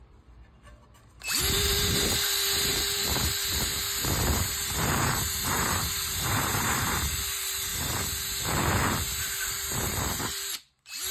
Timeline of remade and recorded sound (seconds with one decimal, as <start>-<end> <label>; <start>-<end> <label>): 0.0-3.7 remade; 3.7-4.5 recorded; 4.5-7.7 remade; 7.7-9.4 recorded; 9.4-11.1 remade